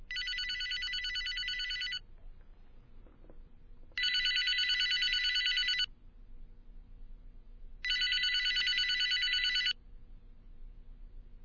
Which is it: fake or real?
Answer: real